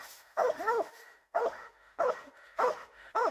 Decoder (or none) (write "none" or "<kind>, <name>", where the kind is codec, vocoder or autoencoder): autoencoder, DAC-VAE